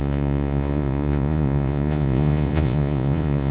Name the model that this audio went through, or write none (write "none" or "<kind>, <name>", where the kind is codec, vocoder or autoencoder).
vocoder, Vocos